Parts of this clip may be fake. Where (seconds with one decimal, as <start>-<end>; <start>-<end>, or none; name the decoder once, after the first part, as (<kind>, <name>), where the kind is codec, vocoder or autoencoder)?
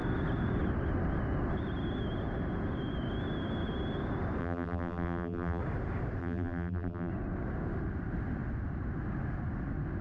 4.4-5.6 (vocoder, BigVGAN v2); 6.2-7.1